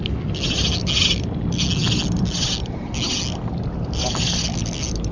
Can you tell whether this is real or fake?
real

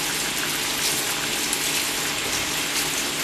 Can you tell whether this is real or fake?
real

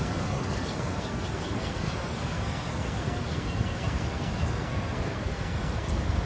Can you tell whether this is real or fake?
fake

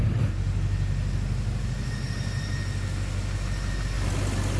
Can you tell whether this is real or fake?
real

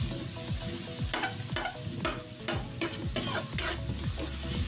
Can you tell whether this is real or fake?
real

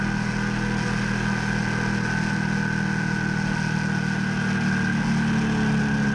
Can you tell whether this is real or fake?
real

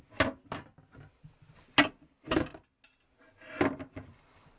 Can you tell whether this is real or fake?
real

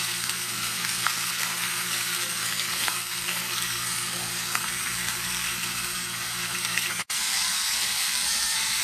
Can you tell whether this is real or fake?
fake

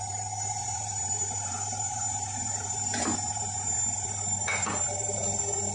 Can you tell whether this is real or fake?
real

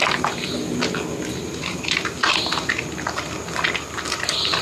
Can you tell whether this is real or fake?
real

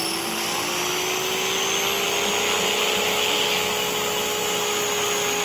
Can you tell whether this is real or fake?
real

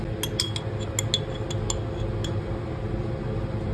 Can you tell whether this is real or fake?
real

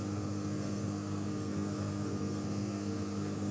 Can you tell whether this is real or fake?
fake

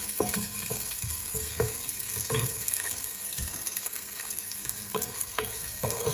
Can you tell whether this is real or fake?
fake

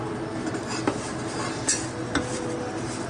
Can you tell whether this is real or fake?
real